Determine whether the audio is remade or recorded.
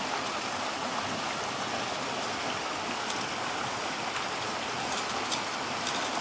recorded